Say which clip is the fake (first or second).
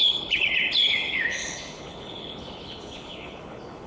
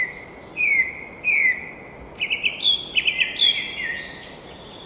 first